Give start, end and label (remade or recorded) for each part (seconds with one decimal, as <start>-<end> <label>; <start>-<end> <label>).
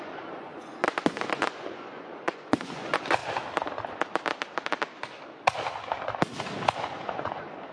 0.0-3.2 remade; 3.2-6.8 recorded; 6.8-7.7 remade